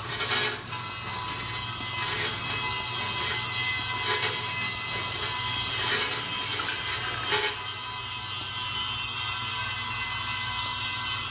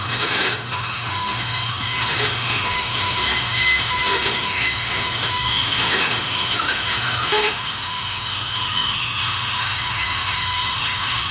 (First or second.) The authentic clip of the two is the first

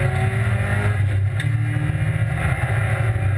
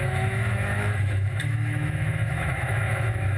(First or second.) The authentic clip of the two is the first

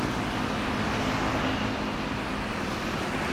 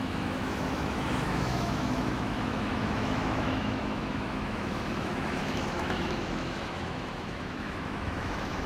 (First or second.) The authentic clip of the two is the first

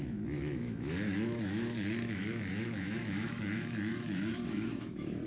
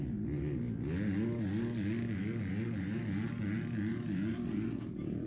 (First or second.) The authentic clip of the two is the second